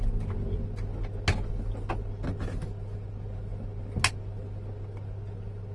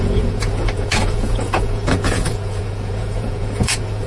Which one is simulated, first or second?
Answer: second